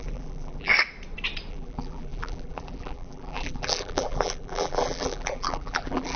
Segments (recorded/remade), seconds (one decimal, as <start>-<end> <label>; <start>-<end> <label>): 0.0-0.7 remade; 0.7-1.5 recorded; 1.5-6.2 remade